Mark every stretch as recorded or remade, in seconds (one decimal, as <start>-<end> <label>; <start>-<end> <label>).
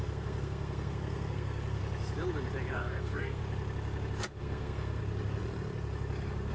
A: 0.0-1.8 remade; 1.8-2.7 recorded; 2.7-3.4 remade; 3.4-4.4 recorded; 4.4-5.0 remade; 5.0-6.5 recorded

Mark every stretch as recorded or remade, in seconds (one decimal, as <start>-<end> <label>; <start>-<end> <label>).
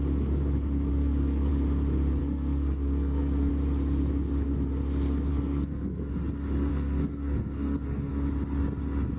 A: 0.0-0.9 recorded; 0.9-1.5 remade; 1.5-2.2 recorded; 2.2-3.5 remade; 3.5-5.3 recorded; 5.3-6.1 remade; 6.1-6.7 recorded; 6.7-8.1 remade; 8.1-9.2 recorded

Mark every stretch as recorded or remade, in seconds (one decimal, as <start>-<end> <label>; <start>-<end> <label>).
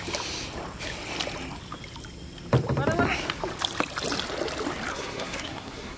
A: 0.0-4.9 recorded; 4.9-6.0 remade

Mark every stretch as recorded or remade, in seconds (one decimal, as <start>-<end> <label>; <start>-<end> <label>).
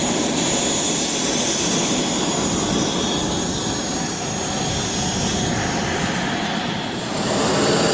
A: 0.0-7.9 recorded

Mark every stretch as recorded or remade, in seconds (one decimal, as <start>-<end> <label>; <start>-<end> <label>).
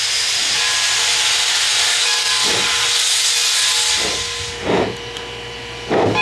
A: 0.0-1.9 recorded; 1.9-2.5 remade; 2.5-6.2 recorded